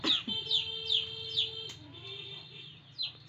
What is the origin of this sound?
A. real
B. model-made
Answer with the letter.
A